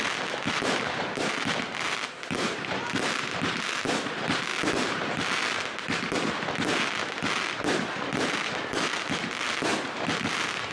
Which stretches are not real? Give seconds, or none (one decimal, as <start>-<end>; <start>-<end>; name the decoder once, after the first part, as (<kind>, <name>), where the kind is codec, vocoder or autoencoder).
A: 0.0-4.5 (vocoder, BigVGAN v2); 7.5-10.7